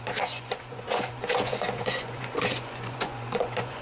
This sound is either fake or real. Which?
fake